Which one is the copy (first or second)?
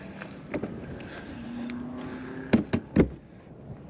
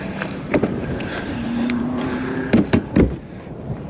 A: second